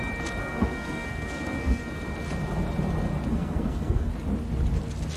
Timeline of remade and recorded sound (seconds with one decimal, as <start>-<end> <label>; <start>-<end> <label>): 0.0-0.4 recorded; 0.4-1.8 remade; 1.8-3.3 recorded; 3.3-4.1 remade; 4.1-5.2 recorded